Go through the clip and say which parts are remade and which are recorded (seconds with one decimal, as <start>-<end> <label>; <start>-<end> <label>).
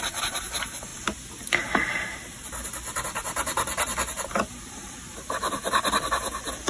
0.0-6.7 recorded